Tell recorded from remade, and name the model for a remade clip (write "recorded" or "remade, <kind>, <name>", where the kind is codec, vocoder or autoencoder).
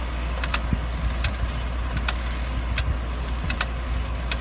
recorded